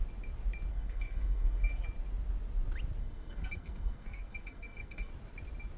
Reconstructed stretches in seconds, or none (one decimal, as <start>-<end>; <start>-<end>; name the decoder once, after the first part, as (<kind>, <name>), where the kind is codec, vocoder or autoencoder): 0.7-1.8 (codec, SNAC); 3.0-5.1